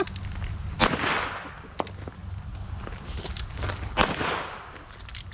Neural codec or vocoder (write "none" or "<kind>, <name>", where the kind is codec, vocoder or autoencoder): none